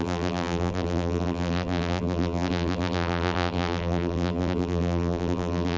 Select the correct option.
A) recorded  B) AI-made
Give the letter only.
B